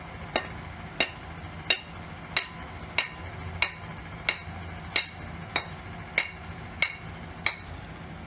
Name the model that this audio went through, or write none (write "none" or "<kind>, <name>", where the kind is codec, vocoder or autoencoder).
none